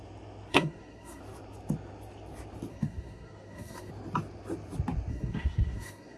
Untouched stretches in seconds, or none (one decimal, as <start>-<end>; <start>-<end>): 0.0-0.5; 1.2-2.7; 3.9-5.1